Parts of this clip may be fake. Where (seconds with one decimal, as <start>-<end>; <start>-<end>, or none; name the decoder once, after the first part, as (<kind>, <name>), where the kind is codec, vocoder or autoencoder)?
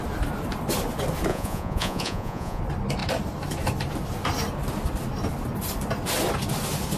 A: 1.3-2.6 (vocoder, Vocos)